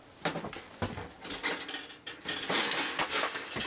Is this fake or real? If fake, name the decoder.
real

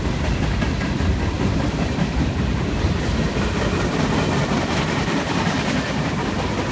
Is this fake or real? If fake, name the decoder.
real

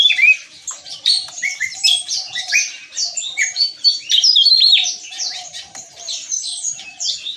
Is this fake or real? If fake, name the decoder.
fake, vocoder, BigVGAN v2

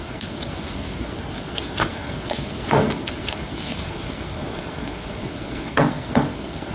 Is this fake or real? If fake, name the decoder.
fake, codec, SNAC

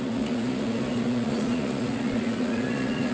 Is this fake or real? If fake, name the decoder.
fake, vocoder, Vocos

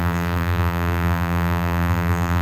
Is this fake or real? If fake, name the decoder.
fake, vocoder, BigVGAN v2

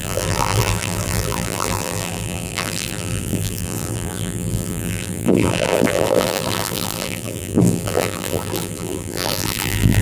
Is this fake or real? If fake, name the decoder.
fake, vocoder, BigVGAN v2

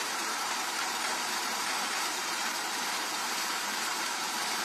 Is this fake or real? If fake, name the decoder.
fake, vocoder, BigVGAN v2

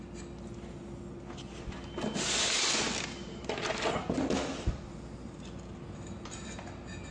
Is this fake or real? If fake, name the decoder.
real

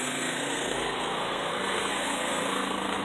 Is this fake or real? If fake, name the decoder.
fake, codec, SNAC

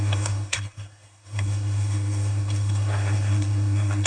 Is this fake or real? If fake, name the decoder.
fake, codec, SNAC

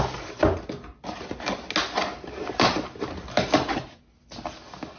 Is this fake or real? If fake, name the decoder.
real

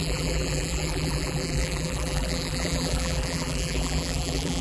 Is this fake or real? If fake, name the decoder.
fake, vocoder, BigVGAN v2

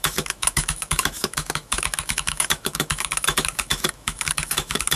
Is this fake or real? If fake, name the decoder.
fake, autoencoder, DAC-VAE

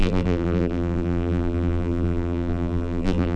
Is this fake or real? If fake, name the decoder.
fake, vocoder, BigVGAN v2